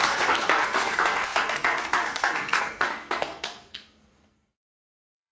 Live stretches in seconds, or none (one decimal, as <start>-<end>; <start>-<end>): none